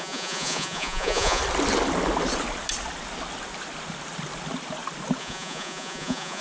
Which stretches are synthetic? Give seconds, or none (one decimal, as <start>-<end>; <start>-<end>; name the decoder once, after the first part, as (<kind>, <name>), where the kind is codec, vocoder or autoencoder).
0.0-1.4 (vocoder, Vocos); 5.2-6.4